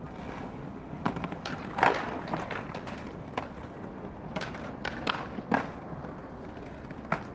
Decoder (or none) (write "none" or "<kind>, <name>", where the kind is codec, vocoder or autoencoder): none